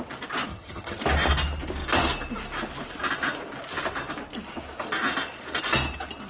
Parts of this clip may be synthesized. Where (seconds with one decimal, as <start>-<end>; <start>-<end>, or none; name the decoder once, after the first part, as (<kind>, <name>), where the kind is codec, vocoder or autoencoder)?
0.5-1.0 (vocoder, HiFi-GAN)